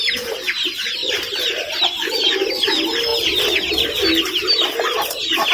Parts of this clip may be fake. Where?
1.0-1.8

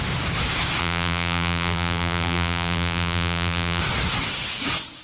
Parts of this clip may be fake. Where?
0.8-3.8

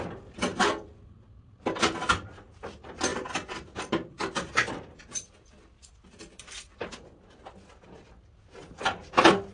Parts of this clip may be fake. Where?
0.5-2.0; 3.1-6.8

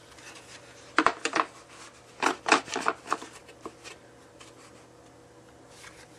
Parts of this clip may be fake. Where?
0.0-1.5

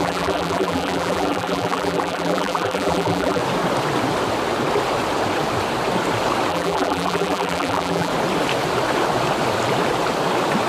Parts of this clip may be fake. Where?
0.0-3.4; 6.5-8.1

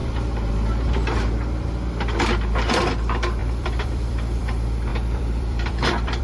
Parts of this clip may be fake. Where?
0.0-0.5; 3.4-4.4; 4.9-6.2